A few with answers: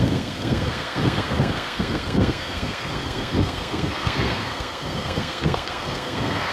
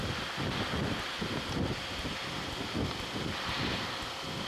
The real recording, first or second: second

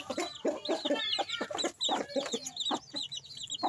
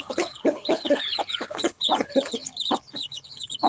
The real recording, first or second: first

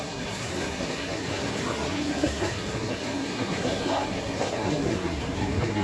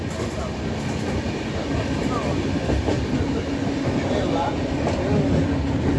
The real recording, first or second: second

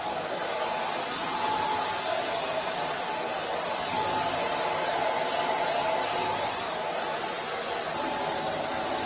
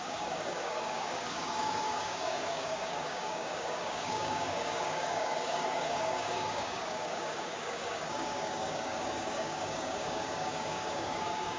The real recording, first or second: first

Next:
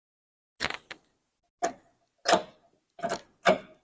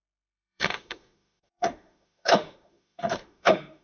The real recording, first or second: first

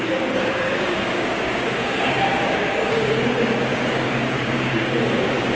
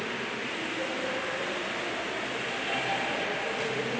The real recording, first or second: second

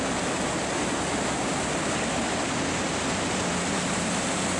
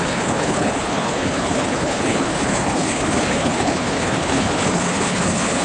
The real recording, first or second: first